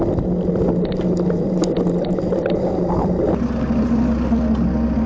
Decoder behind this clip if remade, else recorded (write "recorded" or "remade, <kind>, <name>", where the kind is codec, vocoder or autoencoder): recorded